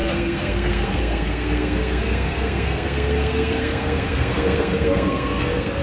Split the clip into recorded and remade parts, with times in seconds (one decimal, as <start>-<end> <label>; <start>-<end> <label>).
0.0-5.8 remade